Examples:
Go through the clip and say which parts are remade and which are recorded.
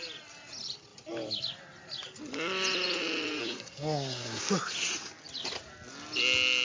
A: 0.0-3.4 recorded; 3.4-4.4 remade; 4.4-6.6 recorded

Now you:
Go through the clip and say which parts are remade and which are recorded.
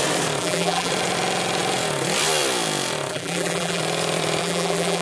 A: 0.0-0.4 recorded; 0.4-0.9 remade; 0.9-3.1 recorded; 3.1-3.8 remade; 3.8-4.4 recorded; 4.4-5.0 remade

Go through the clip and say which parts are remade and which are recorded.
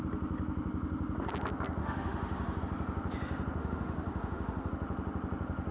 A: 0.0-1.8 recorded; 1.8-2.6 remade; 2.6-3.6 recorded; 3.6-4.7 remade; 4.7-5.7 recorded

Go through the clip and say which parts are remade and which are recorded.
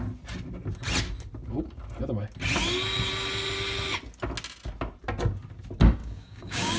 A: 0.0-6.0 recorded; 6.0-6.8 remade